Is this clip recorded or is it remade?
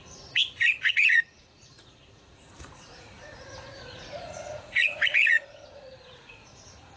remade